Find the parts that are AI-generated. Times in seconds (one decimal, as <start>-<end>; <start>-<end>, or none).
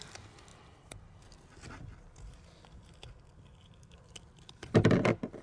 none